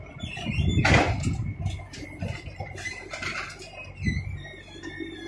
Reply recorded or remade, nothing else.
recorded